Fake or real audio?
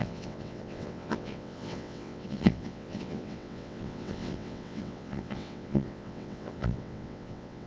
fake